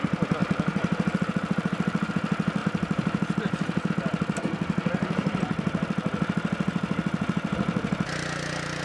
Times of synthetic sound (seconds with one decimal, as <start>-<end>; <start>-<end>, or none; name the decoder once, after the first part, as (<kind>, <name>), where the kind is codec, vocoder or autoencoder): 0.4-2.1 (vocoder, BigVGAN v2); 2.6-3.9